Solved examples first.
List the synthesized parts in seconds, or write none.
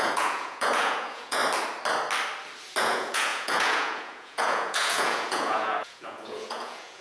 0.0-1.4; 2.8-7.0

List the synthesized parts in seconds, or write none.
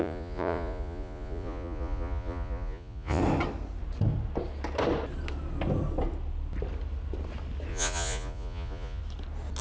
0.0-3.2; 7.7-9.0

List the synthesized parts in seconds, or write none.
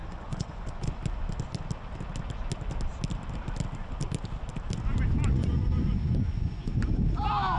0.0-1.0; 5.3-6.7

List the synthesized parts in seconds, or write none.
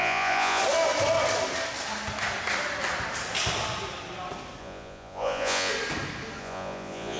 0.0-0.6; 4.6-5.7; 6.4-7.2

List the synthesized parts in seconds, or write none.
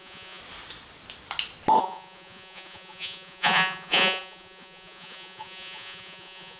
0.0-0.4; 1.8-6.6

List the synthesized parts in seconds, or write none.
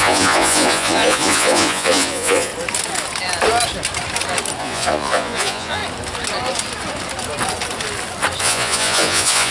0.0-2.5; 4.6-5.8; 8.4-9.5